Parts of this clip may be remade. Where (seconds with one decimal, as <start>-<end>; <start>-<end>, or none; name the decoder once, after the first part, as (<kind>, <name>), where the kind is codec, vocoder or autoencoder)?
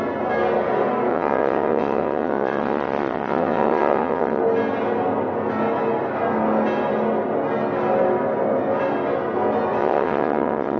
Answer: 1.1-4.4 (vocoder, WaveNeXt); 9.8-10.8